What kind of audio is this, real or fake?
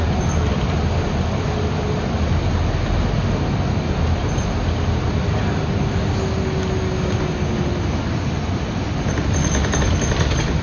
real